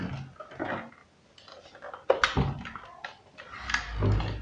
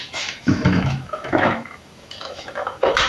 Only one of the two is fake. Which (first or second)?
second